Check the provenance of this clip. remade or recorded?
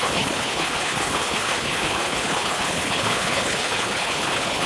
remade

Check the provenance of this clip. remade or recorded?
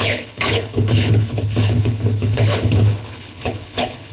remade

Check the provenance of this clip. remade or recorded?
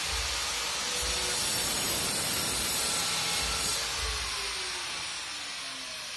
recorded